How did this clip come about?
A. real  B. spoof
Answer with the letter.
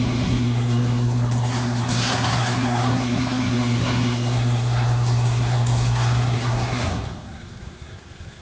B